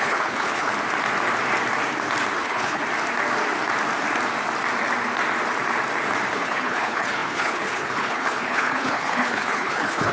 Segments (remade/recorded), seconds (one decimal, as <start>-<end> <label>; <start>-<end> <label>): 0.0-0.7 remade; 0.7-2.4 recorded; 2.4-2.8 remade; 2.8-6.3 recorded; 6.3-10.1 remade